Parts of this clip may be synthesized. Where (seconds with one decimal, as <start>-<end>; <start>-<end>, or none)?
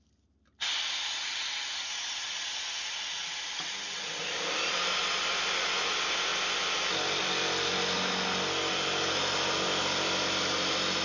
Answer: none